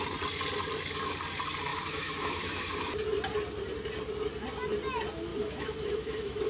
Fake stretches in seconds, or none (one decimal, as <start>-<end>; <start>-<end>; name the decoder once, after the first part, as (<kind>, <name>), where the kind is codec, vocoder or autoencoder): 1.7-2.7 (autoencoder, DAC-VAE); 5.3-6.5